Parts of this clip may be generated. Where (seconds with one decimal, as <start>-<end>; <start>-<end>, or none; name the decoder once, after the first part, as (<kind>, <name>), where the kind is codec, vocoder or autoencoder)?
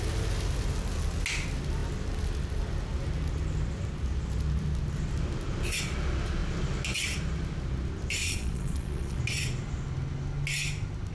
8.2-9.2 (vocoder, Vocos)